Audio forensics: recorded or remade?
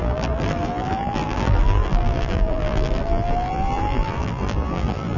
remade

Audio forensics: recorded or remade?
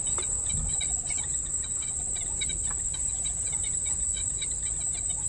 recorded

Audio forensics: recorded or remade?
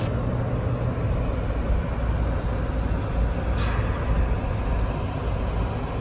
recorded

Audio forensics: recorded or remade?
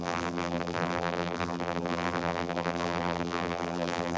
remade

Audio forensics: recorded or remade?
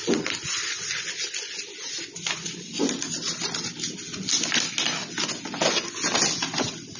recorded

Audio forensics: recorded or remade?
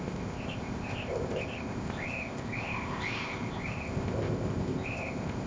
remade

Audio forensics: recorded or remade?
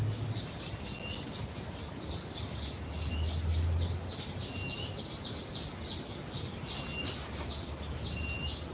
recorded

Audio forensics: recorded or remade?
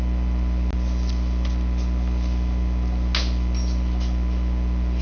recorded